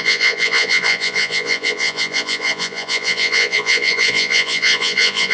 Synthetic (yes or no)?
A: yes